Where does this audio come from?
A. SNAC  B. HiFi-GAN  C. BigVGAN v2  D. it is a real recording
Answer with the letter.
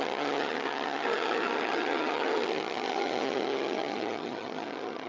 B